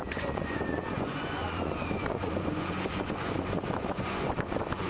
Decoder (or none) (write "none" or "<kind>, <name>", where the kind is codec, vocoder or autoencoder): vocoder, Vocos